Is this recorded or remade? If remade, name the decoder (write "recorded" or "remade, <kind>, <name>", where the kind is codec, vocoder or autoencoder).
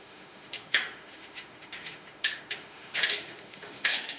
remade, autoencoder, DAC-VAE